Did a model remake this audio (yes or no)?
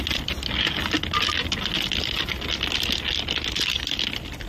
no